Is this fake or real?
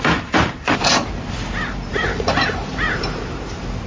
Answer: fake